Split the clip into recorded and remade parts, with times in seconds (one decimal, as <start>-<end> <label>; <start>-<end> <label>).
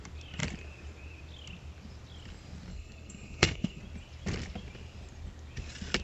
0.0-2.7 recorded; 2.7-3.8 remade; 3.8-6.0 recorded